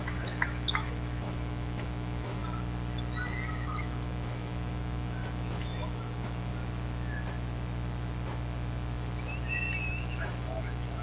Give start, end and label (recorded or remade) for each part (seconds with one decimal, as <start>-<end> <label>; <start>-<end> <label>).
0.0-2.4 remade; 2.4-3.5 recorded; 3.5-6.5 remade; 6.5-9.9 recorded; 9.9-11.0 remade